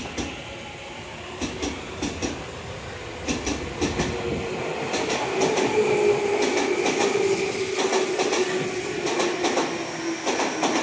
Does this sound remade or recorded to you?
recorded